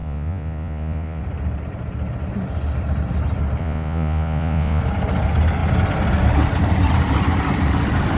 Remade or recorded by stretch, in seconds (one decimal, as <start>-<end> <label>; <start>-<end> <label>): 0.0-1.2 remade; 1.2-3.6 recorded; 3.6-4.8 remade; 4.8-8.2 recorded